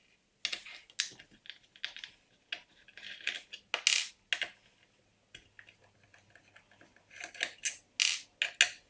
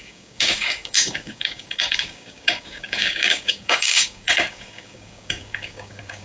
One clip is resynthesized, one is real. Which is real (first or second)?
first